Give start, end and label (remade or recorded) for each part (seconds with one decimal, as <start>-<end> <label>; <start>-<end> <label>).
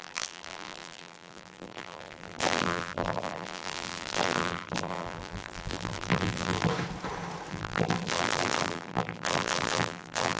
0.0-6.7 remade; 6.7-7.5 recorded; 7.5-10.4 remade